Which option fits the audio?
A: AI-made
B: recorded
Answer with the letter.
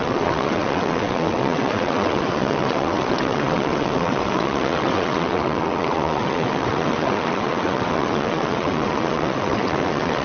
A